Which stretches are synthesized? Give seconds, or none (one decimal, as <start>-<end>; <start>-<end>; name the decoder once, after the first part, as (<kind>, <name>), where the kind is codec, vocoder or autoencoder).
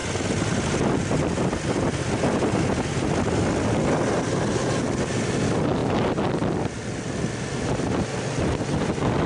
none